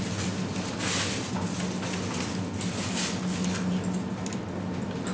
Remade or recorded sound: recorded